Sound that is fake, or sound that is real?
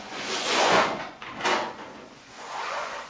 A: fake